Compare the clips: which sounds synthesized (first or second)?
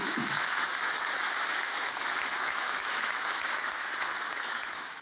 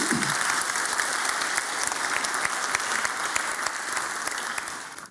first